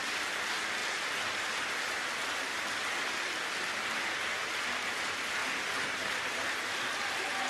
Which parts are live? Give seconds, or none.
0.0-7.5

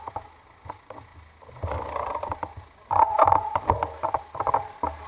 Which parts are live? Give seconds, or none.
0.0-5.1

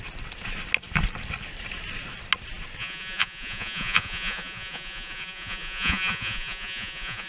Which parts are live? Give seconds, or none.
0.0-2.8

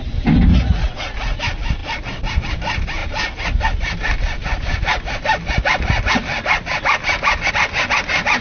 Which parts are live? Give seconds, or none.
0.0-0.5; 1.4-8.4